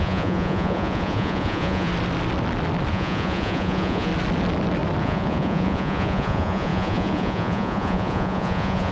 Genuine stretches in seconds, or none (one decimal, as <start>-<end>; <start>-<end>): 1.9-2.9; 4.1-5.0